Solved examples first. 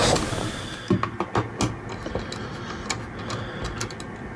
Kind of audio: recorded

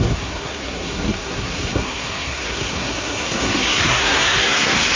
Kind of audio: remade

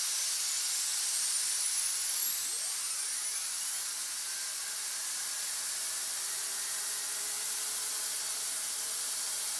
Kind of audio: recorded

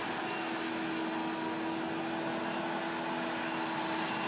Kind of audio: recorded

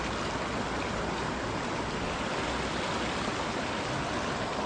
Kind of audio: recorded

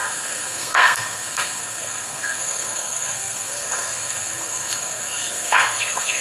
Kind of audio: remade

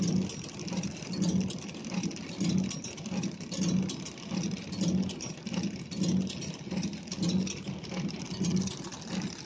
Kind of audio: recorded